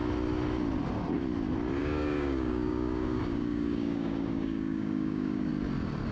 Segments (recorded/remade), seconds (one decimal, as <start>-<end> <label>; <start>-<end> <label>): 0.0-1.8 recorded; 1.8-5.5 remade; 5.5-6.1 recorded